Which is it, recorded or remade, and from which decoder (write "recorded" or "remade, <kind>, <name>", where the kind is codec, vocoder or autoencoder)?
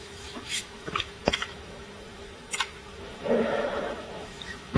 remade, autoencoder, DAC-VAE